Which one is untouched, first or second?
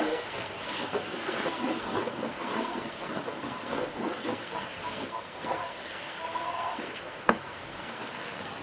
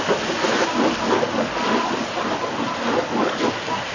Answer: second